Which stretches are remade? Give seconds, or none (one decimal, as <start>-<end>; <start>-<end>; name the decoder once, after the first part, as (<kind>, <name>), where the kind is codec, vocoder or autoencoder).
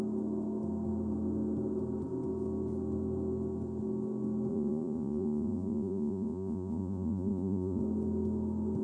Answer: 4.5-7.8 (vocoder, Vocos)